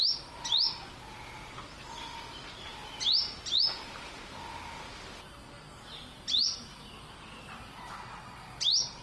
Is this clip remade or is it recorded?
recorded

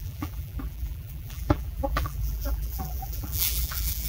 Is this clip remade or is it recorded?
remade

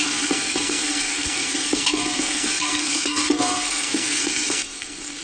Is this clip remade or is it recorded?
remade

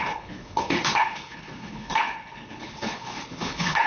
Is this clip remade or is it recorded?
remade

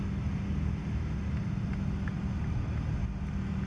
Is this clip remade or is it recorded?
recorded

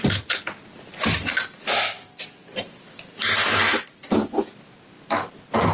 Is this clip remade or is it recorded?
recorded